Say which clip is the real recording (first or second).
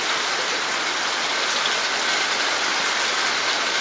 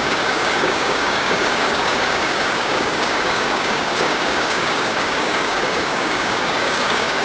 first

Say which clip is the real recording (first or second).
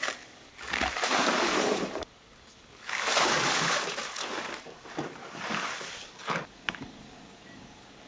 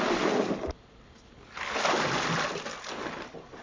second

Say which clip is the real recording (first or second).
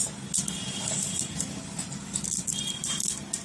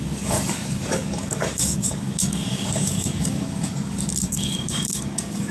first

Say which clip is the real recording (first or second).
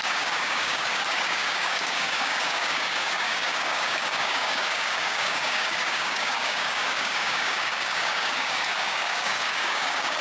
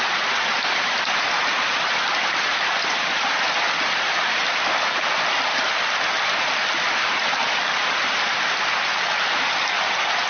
second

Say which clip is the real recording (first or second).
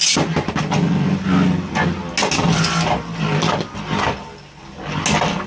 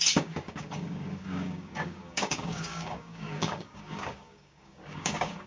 first